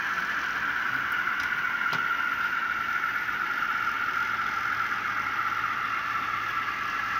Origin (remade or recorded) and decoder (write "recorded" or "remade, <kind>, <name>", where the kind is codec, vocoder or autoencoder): recorded